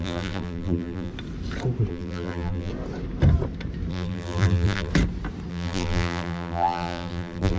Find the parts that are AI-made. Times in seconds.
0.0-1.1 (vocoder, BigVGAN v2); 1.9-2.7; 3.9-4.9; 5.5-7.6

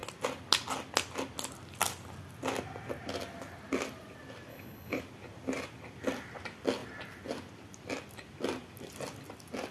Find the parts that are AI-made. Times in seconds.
4.5-5.0 (codec, HILCodec)

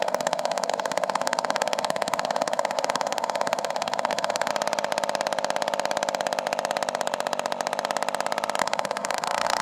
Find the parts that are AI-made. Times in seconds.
0.0-4.5 (codec, SNAC); 8.6-9.6

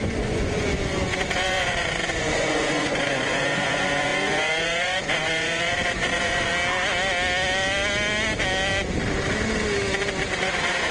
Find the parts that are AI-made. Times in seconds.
0.0-6.5 (vocoder, Vocos); 10.4-10.9

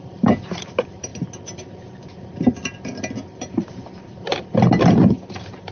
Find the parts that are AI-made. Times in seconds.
none

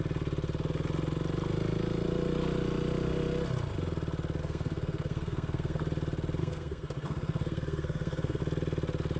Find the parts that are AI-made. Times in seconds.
4.4-5.8 (codec, SNAC); 6.4-8.4

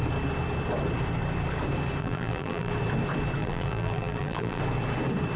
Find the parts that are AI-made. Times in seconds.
2.0-2.7 (vocoder, BigVGAN v2); 3.4-4.6